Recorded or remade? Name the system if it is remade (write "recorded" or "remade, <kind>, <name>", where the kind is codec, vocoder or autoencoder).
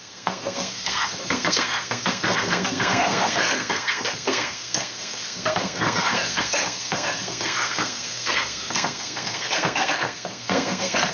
remade, codec, SNAC